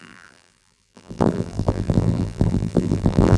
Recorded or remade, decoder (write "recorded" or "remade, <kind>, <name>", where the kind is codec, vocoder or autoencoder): remade, vocoder, BigVGAN v2